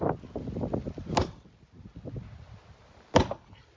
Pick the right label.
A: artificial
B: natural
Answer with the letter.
B